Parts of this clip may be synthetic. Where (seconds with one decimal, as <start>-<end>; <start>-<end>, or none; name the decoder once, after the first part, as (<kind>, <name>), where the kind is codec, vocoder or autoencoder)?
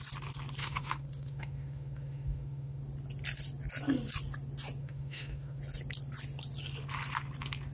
0.6-2.8 (autoencoder, DAC-VAE); 4.8-5.6